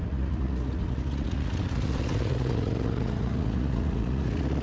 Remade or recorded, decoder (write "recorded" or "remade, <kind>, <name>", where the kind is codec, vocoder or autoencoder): remade, vocoder, Vocos